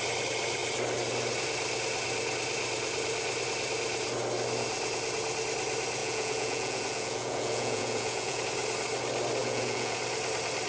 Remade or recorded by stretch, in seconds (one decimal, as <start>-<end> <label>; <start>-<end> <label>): 0.0-6.0 recorded; 6.0-8.4 remade; 8.4-9.4 recorded; 9.4-10.0 remade; 10.0-10.7 recorded